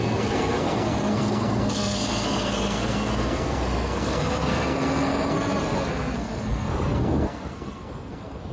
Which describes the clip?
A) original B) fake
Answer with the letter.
B